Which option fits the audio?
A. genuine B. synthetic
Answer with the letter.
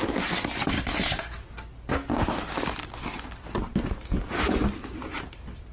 A